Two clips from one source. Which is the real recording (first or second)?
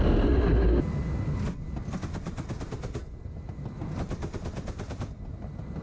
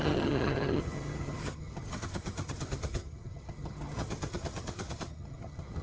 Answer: first